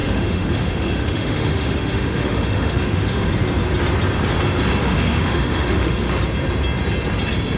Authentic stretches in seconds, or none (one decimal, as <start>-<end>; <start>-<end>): 3.3-4.8; 6.1-7.6